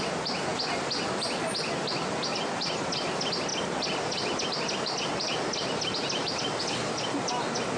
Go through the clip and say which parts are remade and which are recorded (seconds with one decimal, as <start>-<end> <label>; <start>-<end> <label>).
0.0-7.8 recorded